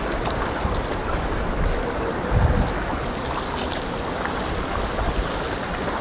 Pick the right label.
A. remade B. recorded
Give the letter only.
B